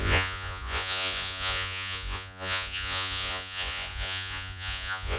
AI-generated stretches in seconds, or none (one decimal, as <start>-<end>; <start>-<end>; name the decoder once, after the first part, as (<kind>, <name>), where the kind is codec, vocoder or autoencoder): 0.0-5.2 (vocoder, Vocos)